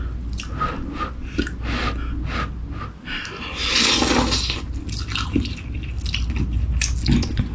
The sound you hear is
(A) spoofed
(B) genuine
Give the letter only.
B